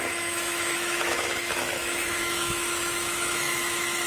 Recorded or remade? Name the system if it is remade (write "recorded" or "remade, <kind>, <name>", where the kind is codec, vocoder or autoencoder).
remade, autoencoder, DAC-VAE